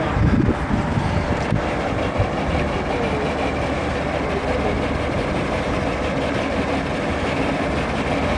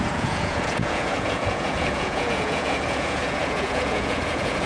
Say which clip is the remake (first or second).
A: second